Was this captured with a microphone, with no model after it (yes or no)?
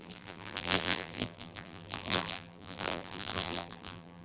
no